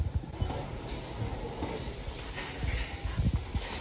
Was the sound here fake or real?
real